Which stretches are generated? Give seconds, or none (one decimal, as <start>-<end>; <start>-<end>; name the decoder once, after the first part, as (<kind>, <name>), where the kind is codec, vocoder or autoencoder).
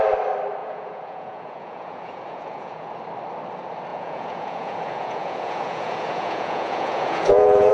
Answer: 0.6-2.9 (vocoder, Vocos); 3.9-7.7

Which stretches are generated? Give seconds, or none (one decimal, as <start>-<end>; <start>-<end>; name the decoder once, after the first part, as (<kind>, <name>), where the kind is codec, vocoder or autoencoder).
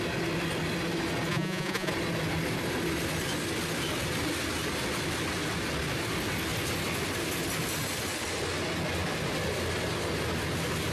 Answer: 1.3-1.9 (vocoder, Vocos)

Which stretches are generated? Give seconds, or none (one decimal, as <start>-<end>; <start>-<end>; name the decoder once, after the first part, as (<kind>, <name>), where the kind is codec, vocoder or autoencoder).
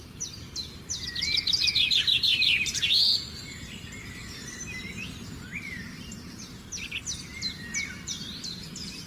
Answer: 0.0-9.1 (vocoder, BigVGAN v2)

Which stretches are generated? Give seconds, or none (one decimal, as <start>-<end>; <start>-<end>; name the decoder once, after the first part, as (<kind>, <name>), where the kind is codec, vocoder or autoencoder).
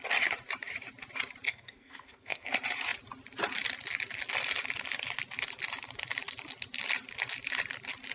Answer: 1.5-2.5 (codec, SNAC)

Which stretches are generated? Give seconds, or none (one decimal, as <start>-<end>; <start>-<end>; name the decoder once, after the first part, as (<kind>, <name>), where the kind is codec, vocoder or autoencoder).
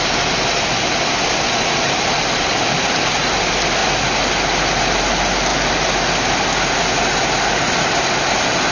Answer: none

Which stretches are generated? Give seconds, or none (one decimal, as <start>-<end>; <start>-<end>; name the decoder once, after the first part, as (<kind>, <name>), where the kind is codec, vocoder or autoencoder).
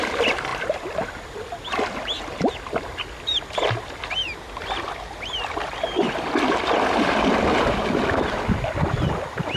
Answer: none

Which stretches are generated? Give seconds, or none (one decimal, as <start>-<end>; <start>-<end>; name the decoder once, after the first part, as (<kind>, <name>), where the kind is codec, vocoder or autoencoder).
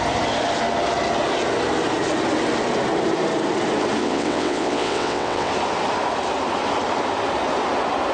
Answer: 4.0-5.5 (vocoder, WaveNeXt)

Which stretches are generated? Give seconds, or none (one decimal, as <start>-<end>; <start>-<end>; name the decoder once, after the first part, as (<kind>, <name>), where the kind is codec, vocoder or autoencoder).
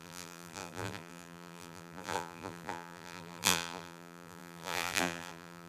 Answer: 0.0-5.7 (vocoder, BigVGAN v2)